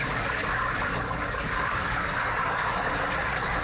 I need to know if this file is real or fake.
fake